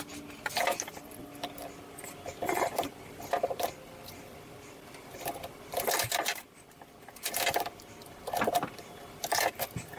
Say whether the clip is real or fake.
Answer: real